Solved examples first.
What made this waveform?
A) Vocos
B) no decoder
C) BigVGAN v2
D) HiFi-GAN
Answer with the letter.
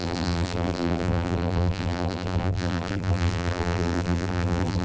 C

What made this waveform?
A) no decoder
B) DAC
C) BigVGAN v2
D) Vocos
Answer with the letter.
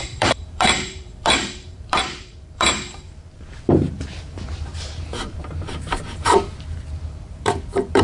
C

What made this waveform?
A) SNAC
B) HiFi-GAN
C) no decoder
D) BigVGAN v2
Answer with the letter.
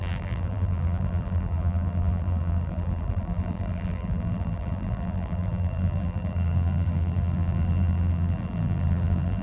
D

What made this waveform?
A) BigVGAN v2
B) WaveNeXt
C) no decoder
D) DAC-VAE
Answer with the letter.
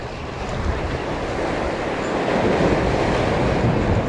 C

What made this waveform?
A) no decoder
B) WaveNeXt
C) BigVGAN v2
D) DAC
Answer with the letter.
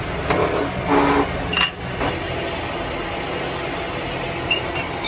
A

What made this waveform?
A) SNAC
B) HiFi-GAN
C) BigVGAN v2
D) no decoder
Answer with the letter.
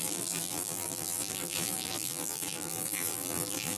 C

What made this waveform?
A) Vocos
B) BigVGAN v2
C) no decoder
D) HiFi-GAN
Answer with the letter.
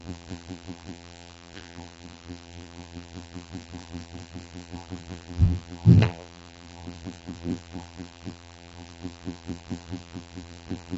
B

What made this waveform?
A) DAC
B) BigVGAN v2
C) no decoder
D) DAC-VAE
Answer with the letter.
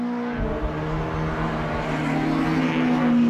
C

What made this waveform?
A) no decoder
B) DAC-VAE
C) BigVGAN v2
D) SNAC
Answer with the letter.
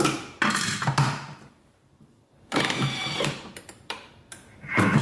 C